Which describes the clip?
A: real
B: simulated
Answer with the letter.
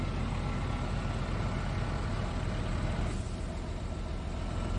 A